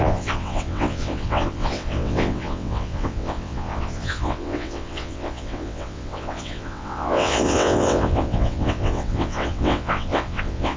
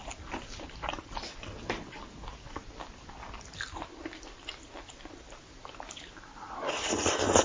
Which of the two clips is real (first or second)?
second